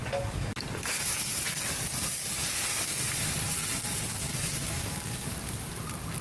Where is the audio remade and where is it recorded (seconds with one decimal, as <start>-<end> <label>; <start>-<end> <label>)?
0.0-1.3 remade; 1.3-4.3 recorded; 4.3-5.3 remade; 5.3-6.2 recorded